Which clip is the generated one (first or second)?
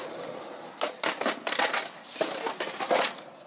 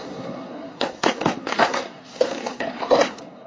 second